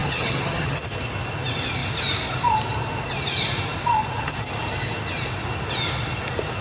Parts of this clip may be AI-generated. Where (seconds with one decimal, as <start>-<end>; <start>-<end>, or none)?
0.0-0.8